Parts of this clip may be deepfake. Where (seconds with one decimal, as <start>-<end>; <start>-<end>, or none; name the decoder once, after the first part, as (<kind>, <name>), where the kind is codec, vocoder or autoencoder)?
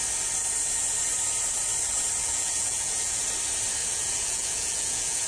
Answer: 2.2-3.2 (vocoder, Vocos); 3.8-5.3